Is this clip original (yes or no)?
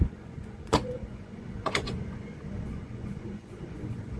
no